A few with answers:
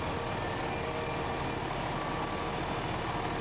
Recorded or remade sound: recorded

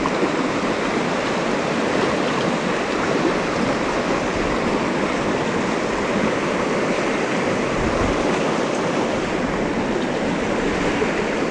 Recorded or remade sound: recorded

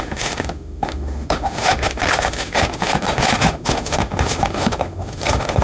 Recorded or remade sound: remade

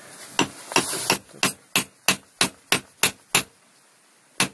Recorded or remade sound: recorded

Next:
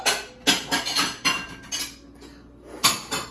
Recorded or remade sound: recorded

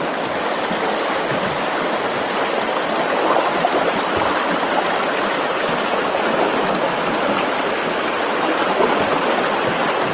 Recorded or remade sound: recorded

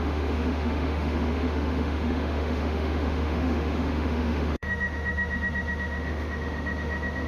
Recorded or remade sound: remade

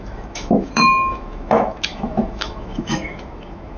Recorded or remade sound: remade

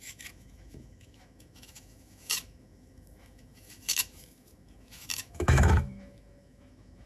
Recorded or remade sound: remade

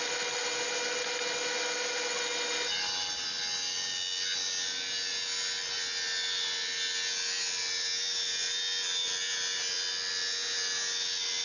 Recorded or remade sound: recorded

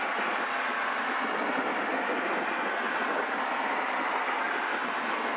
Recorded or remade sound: recorded